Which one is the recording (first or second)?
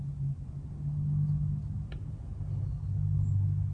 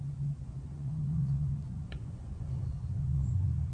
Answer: first